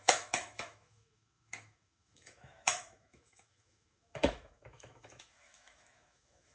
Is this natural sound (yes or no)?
no